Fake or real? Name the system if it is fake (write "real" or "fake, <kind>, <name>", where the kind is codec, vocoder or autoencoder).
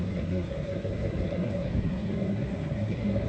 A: fake, codec, SNAC